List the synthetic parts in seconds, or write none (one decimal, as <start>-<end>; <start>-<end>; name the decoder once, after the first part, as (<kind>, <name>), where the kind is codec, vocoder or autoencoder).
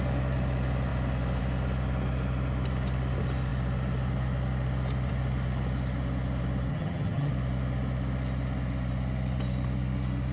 6.7-7.3 (vocoder, HiFi-GAN)